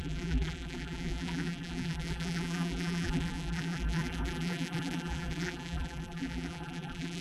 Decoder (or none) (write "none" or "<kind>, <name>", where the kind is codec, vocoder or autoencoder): vocoder, BigVGAN v2